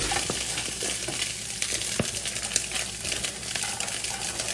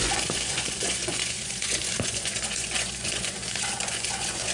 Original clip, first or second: first